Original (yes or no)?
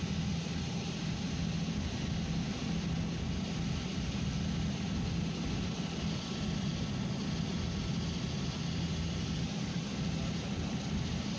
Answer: yes